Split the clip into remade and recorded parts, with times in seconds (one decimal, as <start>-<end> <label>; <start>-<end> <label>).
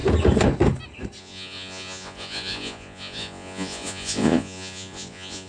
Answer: 0.0-1.2 recorded; 1.2-5.5 remade